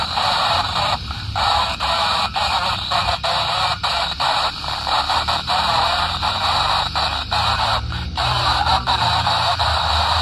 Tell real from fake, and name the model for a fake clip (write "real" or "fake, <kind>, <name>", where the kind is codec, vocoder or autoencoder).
fake, vocoder, BigVGAN v2